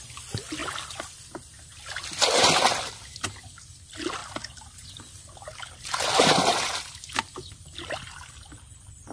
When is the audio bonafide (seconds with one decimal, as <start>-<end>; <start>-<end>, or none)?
0.0-9.1